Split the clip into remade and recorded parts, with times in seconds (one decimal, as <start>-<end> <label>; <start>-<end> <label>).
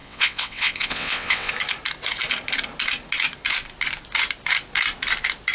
0.0-1.5 remade; 1.5-5.5 recorded